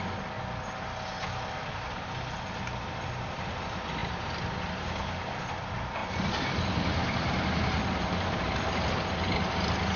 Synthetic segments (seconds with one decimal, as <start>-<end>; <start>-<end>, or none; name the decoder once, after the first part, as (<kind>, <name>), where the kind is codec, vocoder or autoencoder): 4.0-5.4 (vocoder, BigVGAN v2); 6.0-7.8